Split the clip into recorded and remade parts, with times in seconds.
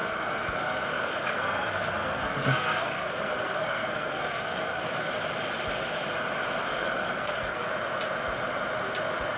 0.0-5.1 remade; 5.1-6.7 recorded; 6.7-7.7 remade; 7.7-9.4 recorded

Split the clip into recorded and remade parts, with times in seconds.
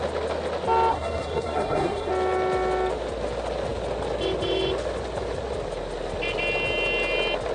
0.0-0.9 recorded; 0.9-2.1 remade; 2.1-7.5 recorded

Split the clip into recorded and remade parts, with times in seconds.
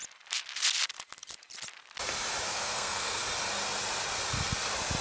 0.0-2.5 recorded; 2.5-3.2 remade; 3.2-5.0 recorded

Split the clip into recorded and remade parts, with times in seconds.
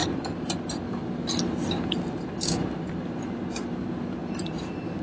0.0-5.0 recorded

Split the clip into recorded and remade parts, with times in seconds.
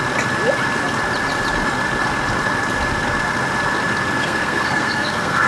0.0-4.2 recorded; 4.2-5.5 remade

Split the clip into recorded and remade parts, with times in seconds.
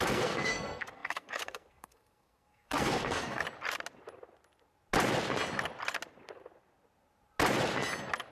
0.0-3.4 remade; 3.4-8.3 recorded